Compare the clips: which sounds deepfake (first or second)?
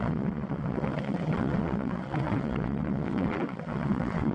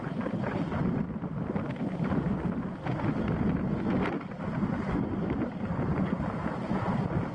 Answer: first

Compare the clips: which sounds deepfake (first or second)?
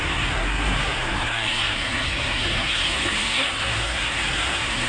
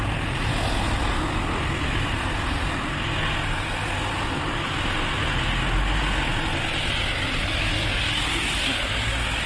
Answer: first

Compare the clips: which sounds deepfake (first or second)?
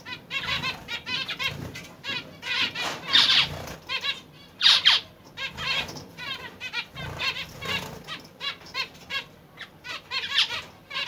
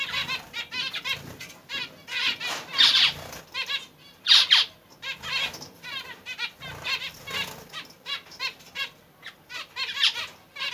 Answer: first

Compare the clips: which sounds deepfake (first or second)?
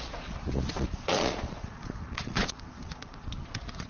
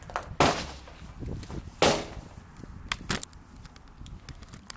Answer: first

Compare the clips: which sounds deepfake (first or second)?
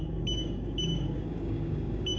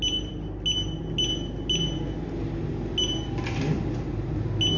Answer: first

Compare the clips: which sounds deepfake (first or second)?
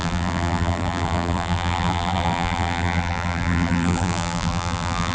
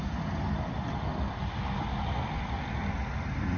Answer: first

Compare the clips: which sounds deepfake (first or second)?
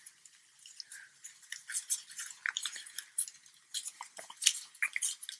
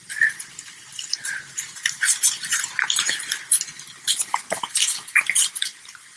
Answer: second